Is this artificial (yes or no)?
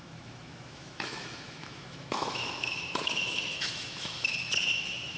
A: yes